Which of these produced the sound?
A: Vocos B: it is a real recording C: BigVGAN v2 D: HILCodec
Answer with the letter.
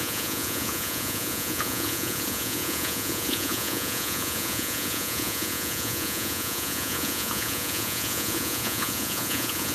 A